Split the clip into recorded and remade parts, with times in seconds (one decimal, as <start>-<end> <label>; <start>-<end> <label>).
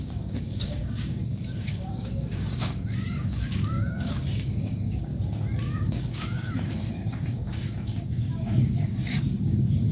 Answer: 0.0-5.1 remade; 5.1-5.9 recorded; 5.9-9.9 remade